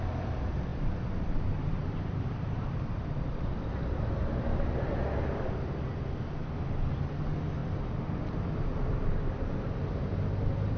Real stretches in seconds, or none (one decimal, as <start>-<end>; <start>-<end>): 0.0-0.7; 5.5-7.6; 8.2-10.8